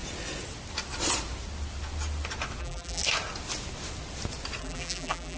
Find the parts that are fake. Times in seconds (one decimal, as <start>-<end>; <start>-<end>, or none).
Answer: 2.6-3.0; 4.6-5.4